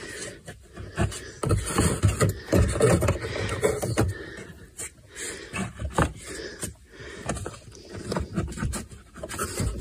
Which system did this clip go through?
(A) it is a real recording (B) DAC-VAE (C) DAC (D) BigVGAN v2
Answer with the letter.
A